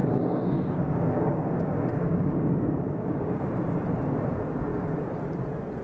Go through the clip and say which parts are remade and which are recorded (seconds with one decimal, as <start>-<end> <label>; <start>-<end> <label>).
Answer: 0.0-3.5 remade; 3.5-5.8 recorded

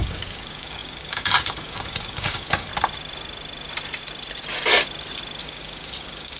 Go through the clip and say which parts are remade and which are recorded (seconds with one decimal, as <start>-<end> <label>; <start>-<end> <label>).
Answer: 0.0-2.7 remade; 2.7-5.4 recorded; 5.4-6.4 remade

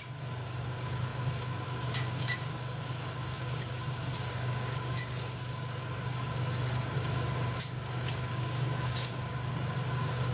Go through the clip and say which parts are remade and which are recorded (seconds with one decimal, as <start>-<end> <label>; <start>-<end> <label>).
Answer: 0.0-10.3 remade

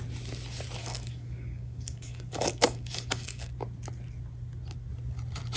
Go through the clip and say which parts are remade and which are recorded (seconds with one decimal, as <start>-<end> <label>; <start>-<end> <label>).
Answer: 0.0-0.8 recorded; 0.8-3.5 remade; 3.5-5.6 recorded

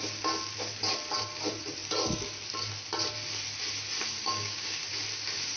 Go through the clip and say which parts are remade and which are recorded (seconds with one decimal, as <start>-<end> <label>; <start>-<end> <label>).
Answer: 0.0-4.2 recorded; 4.2-4.8 remade; 4.8-5.6 recorded